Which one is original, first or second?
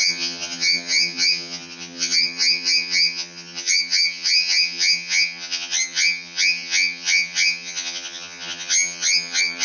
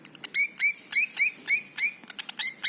second